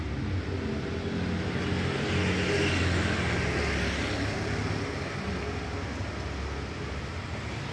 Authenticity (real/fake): real